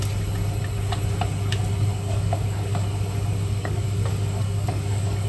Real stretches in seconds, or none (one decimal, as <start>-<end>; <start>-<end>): 0.0-1.9